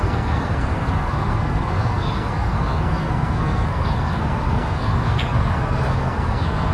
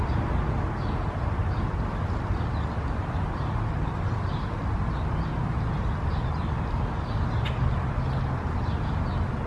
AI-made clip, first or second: first